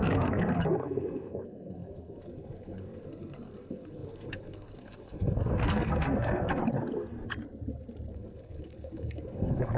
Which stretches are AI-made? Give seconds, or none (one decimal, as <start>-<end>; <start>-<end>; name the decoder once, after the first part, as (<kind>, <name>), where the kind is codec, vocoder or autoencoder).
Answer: 0.0-6.6 (codec, SNAC); 8.1-9.8